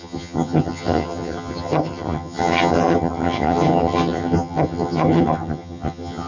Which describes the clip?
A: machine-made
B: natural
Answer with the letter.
A